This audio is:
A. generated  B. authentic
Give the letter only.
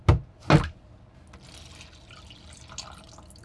B